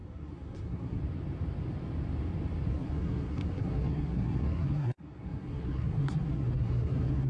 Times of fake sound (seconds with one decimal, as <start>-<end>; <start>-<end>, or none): 0.0-1.0; 2.7-7.3